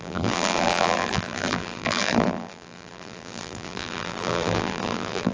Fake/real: fake